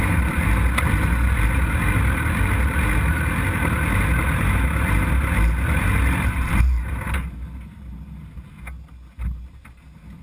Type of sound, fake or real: real